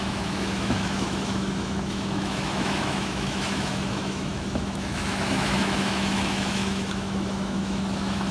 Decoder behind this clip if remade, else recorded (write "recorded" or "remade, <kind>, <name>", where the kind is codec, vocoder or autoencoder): remade, autoencoder, DAC-VAE